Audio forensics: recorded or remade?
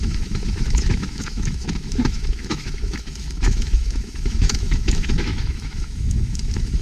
remade